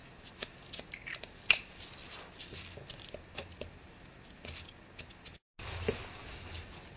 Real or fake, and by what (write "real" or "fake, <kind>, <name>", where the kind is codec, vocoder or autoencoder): real